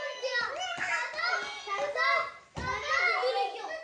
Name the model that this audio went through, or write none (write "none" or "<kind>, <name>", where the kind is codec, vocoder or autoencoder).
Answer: none